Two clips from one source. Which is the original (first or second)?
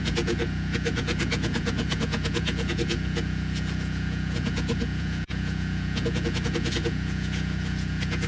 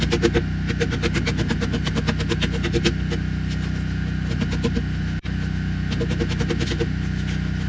second